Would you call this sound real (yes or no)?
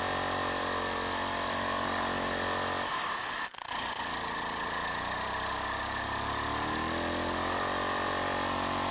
yes